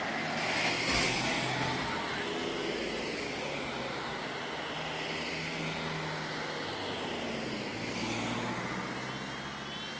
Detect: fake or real real